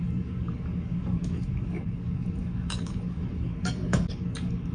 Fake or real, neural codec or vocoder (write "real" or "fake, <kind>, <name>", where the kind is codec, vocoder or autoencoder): fake, codec, DAC